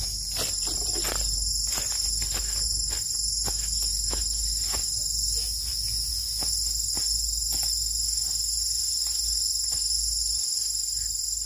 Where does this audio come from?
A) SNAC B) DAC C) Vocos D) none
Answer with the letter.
D